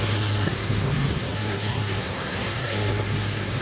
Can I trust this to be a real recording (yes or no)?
no